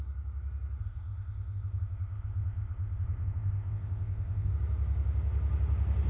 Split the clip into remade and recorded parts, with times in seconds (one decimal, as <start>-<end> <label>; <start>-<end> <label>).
0.0-0.8 recorded; 0.8-4.5 remade; 4.5-6.1 recorded